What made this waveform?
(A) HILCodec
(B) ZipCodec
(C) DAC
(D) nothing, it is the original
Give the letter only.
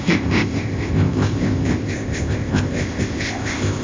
B